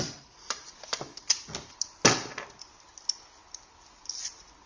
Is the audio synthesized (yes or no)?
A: no